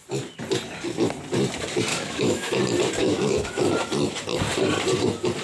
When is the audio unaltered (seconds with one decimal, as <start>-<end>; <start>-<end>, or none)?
0.0-1.9; 2.6-3.0; 3.6-5.4